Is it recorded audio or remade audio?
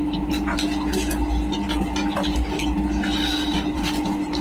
recorded